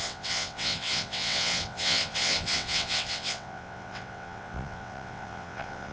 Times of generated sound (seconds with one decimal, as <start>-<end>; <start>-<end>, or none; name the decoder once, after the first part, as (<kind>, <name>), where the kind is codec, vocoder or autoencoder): 0.0-5.9 (vocoder, WaveNeXt)